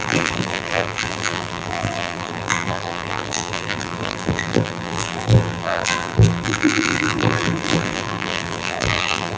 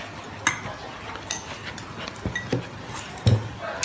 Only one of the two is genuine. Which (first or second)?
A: second